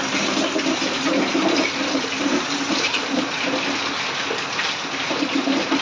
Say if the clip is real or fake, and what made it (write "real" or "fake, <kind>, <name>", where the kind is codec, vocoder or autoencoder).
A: real